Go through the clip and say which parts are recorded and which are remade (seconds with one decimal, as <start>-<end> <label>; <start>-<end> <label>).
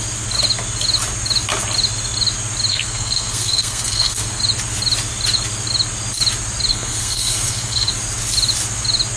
0.0-2.7 recorded; 2.7-4.4 remade; 4.4-6.7 recorded; 6.7-7.9 remade; 7.9-9.2 recorded